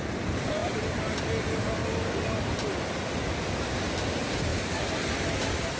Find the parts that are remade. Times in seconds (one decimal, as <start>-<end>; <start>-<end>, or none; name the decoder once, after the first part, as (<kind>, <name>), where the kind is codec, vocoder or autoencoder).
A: none